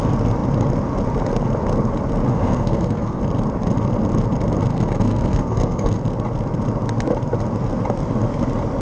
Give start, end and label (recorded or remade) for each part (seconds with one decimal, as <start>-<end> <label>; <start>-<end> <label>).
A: 0.0-2.3 recorded; 2.3-3.2 remade; 3.2-4.7 recorded; 4.7-5.9 remade; 5.9-8.8 recorded